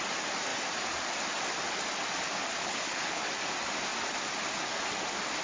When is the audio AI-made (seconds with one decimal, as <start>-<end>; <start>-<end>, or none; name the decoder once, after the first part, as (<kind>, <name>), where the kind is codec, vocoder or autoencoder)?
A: 2.6-3.2 (codec, HILCodec)